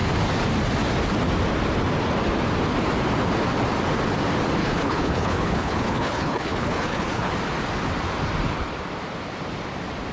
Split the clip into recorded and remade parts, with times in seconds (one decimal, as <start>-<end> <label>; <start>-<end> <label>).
0.0-4.6 recorded; 4.6-7.3 remade; 7.3-10.1 recorded